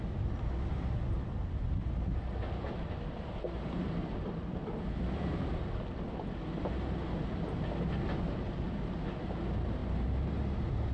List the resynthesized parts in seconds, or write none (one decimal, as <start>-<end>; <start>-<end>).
none